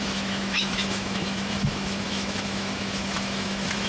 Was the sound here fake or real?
fake